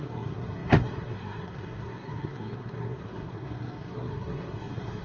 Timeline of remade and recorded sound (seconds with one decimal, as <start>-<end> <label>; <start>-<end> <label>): 0.0-5.0 remade